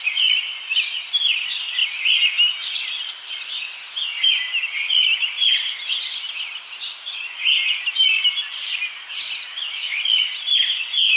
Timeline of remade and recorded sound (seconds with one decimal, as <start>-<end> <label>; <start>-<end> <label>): 0.0-9.5 recorded; 9.5-10.0 remade; 10.0-11.2 recorded